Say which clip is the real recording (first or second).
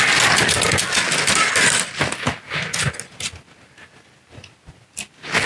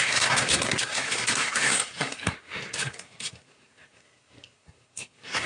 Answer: first